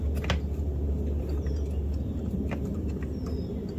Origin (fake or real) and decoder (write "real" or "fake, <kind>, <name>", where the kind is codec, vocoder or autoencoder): real